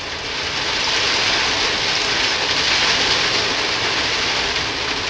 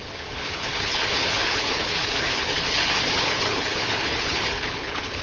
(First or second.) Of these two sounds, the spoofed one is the second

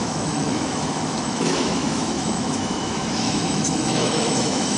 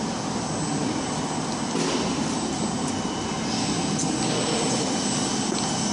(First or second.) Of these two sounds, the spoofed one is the first